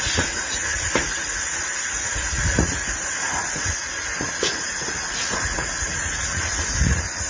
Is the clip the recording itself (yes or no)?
no